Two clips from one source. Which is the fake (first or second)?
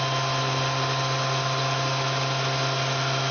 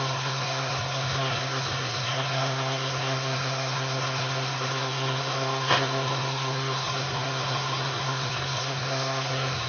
second